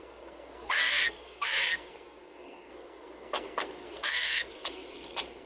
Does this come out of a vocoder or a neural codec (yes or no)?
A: yes